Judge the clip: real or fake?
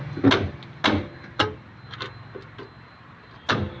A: real